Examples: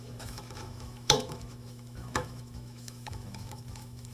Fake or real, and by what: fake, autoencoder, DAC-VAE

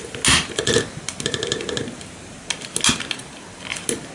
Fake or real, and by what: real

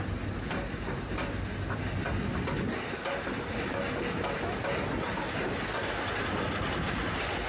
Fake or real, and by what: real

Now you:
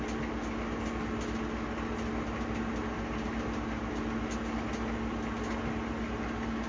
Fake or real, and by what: real